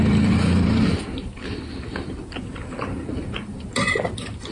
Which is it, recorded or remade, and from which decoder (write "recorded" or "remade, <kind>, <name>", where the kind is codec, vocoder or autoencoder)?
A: remade, vocoder, BigVGAN v2